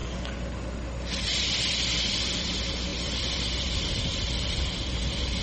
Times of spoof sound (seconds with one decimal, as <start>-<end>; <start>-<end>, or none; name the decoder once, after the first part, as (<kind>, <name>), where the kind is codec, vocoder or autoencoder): 2.1-5.4 (vocoder, BigVGAN v2)